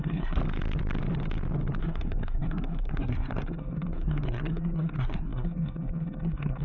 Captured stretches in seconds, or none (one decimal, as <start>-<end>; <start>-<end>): 0.4-1.8